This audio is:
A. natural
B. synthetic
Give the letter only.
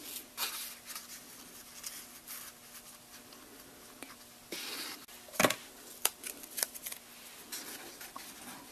A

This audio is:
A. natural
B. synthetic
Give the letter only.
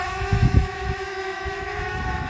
B